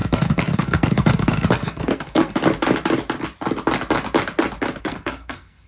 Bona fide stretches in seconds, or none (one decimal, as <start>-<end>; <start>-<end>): 2.4-4.8